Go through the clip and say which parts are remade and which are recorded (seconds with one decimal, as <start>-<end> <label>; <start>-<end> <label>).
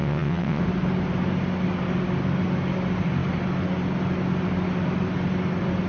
0.0-0.6 remade; 0.6-5.9 recorded